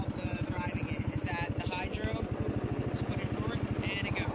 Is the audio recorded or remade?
recorded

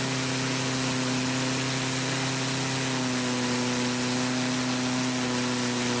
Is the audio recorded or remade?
recorded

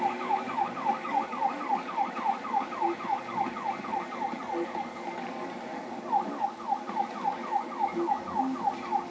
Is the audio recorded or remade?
remade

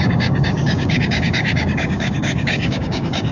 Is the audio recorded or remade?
remade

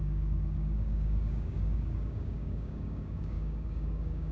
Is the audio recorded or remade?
remade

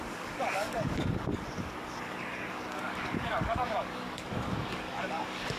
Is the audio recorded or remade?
remade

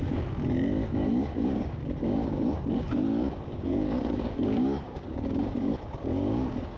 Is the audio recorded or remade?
remade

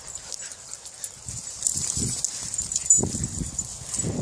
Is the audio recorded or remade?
recorded